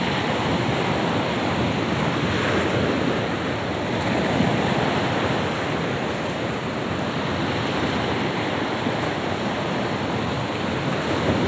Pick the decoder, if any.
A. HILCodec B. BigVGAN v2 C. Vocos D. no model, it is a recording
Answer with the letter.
D